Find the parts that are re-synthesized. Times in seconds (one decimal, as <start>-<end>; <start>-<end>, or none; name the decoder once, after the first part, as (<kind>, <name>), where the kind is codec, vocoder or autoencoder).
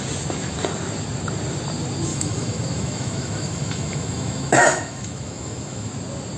2.1-5.9 (autoencoder, DAC-VAE)